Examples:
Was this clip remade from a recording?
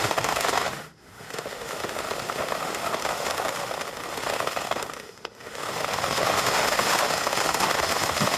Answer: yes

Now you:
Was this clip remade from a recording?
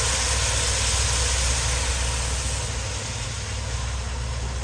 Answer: no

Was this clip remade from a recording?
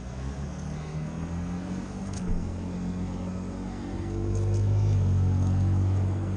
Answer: yes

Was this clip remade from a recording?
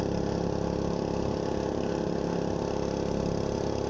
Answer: no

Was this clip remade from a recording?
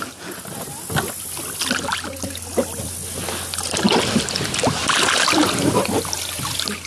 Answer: no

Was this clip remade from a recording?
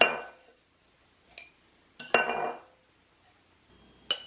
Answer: no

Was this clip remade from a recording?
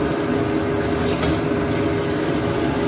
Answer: no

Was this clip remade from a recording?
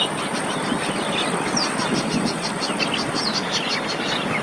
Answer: no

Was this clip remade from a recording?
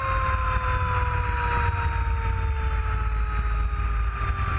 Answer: no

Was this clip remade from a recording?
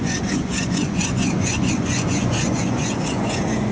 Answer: yes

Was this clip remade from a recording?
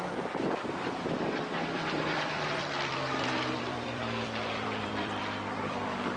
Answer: yes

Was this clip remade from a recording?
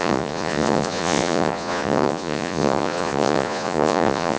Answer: yes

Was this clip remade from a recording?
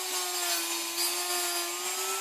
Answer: no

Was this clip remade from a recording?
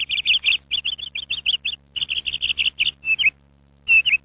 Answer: no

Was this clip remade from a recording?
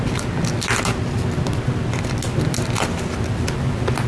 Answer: no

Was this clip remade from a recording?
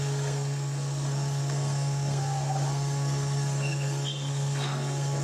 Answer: yes